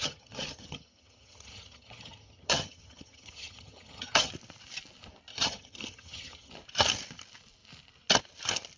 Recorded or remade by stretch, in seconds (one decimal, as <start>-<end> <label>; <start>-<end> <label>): 0.0-4.3 remade; 4.3-5.3 recorded; 5.3-6.5 remade; 6.5-8.8 recorded